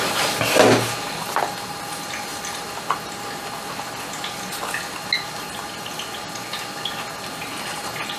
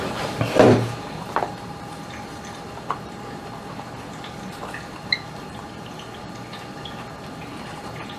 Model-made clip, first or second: second